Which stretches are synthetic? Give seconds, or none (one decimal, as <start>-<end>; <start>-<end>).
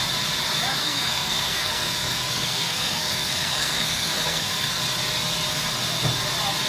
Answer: 0.8-4.8